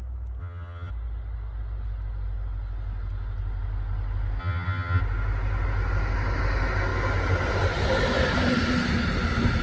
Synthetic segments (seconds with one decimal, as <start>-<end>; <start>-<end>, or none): 0.4-0.9; 4.4-5.0